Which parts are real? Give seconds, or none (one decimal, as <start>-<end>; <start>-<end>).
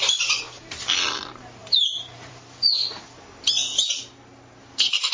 0.0-1.6; 3.0-5.1